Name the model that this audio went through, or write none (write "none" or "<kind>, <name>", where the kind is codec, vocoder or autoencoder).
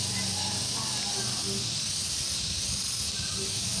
none